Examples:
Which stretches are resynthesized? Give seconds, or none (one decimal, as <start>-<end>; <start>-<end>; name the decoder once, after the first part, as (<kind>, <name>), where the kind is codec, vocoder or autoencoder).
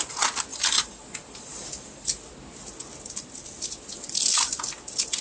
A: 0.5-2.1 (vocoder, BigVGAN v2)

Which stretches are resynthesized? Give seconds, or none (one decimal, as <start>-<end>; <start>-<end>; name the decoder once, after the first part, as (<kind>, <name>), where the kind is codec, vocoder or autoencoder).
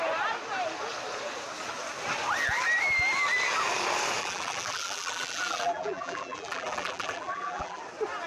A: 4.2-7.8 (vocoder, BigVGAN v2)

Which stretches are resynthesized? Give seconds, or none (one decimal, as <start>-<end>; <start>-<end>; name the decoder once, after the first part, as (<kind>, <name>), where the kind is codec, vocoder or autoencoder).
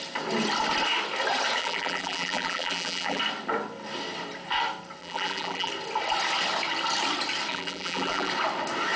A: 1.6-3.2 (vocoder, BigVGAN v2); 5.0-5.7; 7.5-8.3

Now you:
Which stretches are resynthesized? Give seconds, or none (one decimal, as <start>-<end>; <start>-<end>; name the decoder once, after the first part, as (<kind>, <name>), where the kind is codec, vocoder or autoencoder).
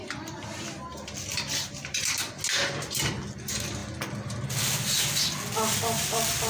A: 0.0-0.7 (vocoder, BigVGAN v2); 1.3-2.3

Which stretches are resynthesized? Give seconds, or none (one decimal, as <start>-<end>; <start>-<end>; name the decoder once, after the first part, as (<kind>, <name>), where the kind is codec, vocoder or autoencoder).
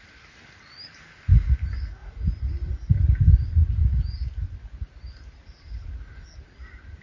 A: none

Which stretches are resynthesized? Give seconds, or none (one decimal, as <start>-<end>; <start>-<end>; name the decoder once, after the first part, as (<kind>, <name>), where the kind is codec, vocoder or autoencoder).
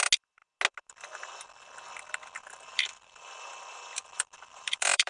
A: 2.7-5.1 (vocoder, BigVGAN v2)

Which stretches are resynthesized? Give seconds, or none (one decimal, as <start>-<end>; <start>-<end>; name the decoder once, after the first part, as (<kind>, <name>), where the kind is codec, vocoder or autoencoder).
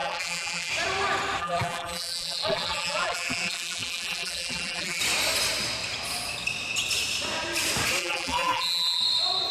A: 0.0-0.7 (vocoder, BigVGAN v2); 1.4-5.0; 8.0-9.0